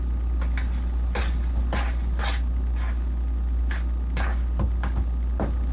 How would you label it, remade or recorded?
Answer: recorded